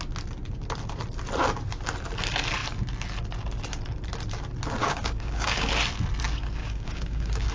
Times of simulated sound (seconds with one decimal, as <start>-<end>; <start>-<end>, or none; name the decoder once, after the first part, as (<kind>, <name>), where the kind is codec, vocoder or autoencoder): 4.8-5.7 (codec, DAC); 6.6-7.5